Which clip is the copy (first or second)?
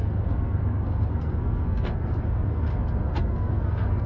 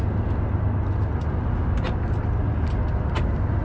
first